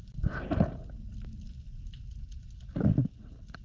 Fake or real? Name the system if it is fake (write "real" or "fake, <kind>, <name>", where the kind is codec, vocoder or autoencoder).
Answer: real